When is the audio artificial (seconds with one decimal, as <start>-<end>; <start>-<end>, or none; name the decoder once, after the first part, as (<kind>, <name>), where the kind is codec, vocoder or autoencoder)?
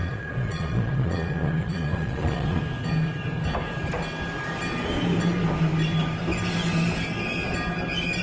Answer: 0.0-2.6 (vocoder, Vocos)